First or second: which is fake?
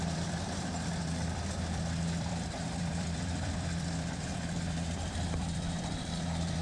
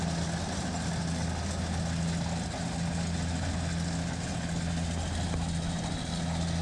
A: first